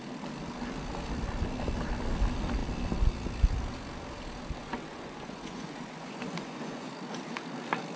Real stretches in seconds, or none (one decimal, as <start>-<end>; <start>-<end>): 0.0-4.6; 6.9-8.0